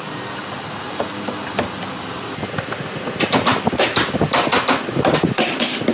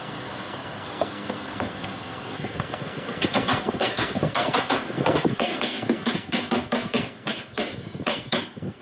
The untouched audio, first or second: first